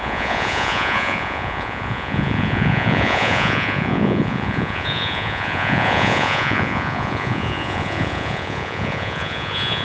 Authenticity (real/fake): fake